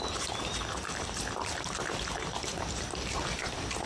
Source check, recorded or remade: remade